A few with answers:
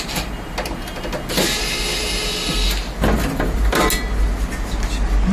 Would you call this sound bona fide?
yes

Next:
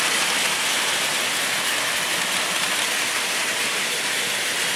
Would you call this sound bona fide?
yes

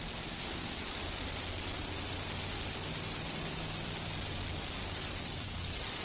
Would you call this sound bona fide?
yes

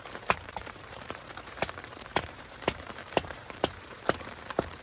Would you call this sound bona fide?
no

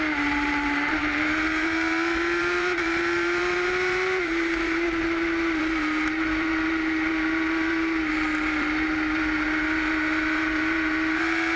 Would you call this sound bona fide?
no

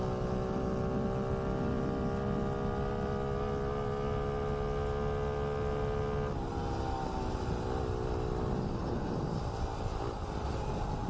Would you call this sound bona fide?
yes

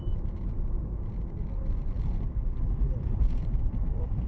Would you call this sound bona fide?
yes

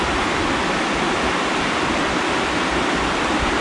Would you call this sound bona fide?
no